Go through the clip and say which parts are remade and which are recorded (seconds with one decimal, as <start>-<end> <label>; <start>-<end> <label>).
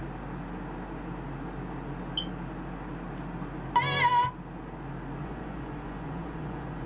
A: 0.0-5.2 recorded; 5.2-6.9 remade